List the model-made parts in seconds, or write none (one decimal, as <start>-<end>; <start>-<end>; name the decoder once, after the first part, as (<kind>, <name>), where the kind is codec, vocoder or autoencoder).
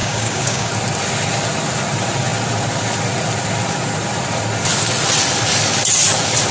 0.0-0.7 (codec, DAC)